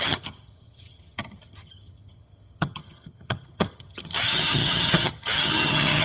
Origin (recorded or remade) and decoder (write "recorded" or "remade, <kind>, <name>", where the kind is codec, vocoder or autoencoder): remade, vocoder, HiFi-GAN